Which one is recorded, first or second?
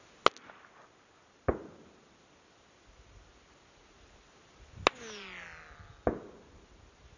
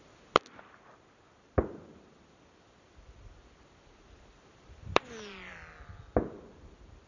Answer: first